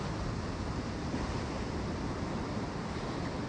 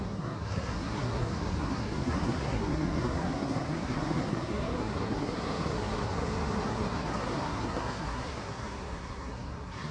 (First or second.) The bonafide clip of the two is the first